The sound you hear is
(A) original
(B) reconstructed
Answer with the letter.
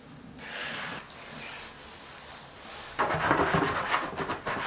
A